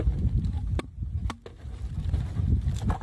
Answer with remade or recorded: recorded